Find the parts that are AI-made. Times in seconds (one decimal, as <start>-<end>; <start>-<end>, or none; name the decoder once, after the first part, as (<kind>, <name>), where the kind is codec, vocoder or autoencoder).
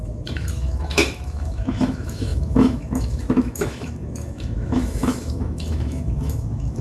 0.0-6.8 (autoencoder, DAC-VAE)